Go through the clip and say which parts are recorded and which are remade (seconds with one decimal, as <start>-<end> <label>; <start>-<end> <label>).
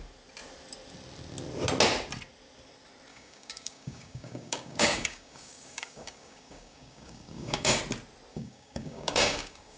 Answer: 0.0-3.1 recorded; 3.1-7.8 remade; 7.8-8.3 recorded; 8.3-9.8 remade